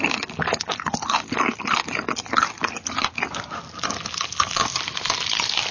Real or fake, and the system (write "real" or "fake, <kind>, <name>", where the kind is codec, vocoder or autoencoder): real